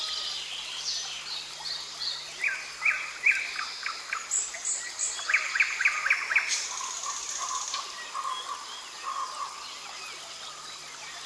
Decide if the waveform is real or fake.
real